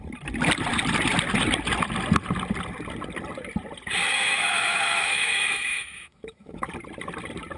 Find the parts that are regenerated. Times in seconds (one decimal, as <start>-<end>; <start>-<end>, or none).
4.1-6.7